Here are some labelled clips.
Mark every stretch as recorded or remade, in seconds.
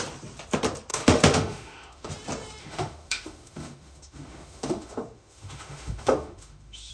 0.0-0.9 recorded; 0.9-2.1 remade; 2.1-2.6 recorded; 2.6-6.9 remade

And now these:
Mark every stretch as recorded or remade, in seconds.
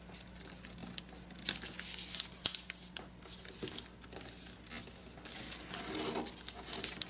0.0-7.1 recorded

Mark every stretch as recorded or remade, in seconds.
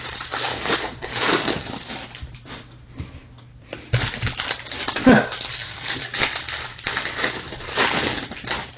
0.0-0.5 recorded; 0.5-1.7 remade; 1.7-5.5 recorded; 5.5-6.1 remade; 6.1-8.8 recorded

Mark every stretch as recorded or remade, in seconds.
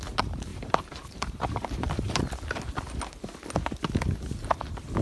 0.0-0.5 recorded; 0.5-2.2 remade; 2.2-5.0 recorded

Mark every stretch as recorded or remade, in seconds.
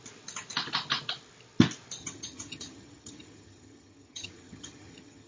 0.0-2.0 recorded; 2.0-5.3 remade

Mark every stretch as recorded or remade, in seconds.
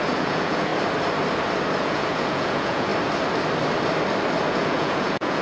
0.0-0.7 remade; 0.7-1.8 recorded; 1.8-2.9 remade; 2.9-4.5 recorded; 4.5-5.4 remade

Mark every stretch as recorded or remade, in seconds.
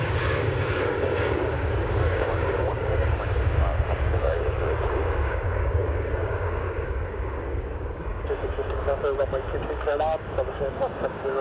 0.0-11.4 remade